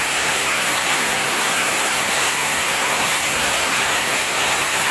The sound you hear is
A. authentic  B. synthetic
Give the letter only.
B